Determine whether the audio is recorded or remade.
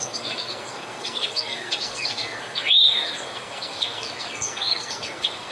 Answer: remade